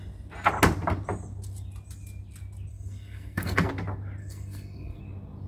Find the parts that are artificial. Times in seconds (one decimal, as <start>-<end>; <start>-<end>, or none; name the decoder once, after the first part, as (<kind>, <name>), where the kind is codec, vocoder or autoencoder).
2.7-3.7 (codec, SNAC); 4.2-5.0

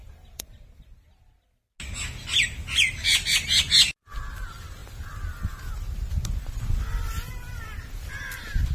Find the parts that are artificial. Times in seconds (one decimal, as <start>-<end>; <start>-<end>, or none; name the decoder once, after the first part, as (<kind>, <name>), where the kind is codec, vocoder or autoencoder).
0.0-0.7 (vocoder, BigVGAN v2)

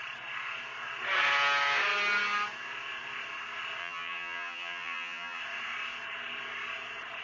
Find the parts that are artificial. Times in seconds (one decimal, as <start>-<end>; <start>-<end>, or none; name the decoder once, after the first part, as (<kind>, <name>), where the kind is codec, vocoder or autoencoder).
3.8-5.4 (vocoder, BigVGAN v2)

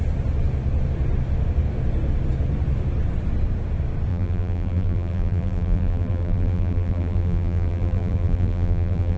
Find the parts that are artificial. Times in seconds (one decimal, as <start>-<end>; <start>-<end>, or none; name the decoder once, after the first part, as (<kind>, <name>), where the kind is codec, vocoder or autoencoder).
4.1-9.2 (vocoder, BigVGAN v2)